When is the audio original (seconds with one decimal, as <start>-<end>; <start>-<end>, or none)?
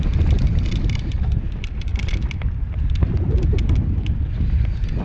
0.0-5.0